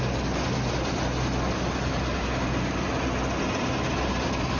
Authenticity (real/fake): real